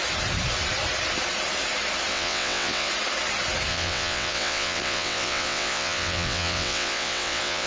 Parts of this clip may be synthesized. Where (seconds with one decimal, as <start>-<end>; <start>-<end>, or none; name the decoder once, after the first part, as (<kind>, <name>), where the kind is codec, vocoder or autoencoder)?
2.1-2.9 (vocoder, WaveNeXt); 3.7-7.7